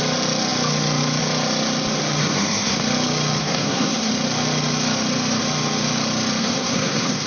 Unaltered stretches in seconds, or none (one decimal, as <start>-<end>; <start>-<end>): 0.0-2.2; 2.8-3.4; 4.1-6.4